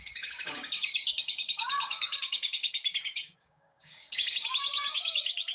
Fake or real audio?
fake